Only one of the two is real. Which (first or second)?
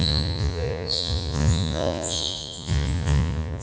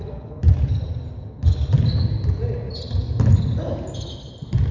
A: second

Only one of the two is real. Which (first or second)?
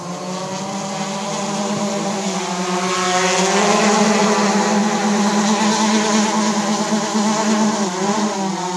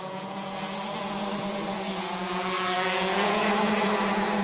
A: first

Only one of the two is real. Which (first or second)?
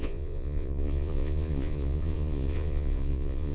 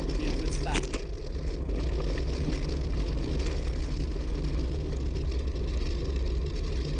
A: second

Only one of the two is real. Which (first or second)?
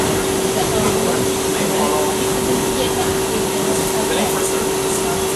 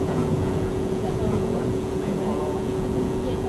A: first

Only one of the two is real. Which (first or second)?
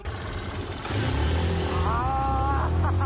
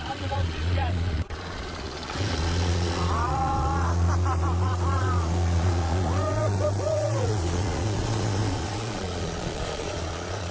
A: first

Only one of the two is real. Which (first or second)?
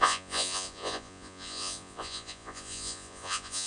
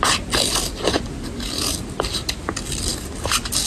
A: second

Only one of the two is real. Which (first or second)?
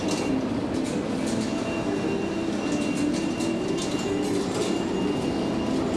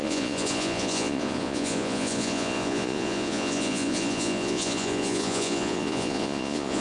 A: first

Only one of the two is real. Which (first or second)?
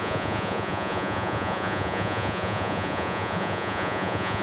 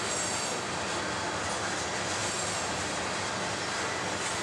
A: second